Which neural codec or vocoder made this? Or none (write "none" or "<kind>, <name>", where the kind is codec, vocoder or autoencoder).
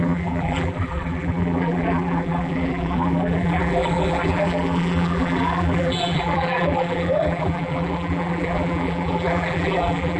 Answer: vocoder, BigVGAN v2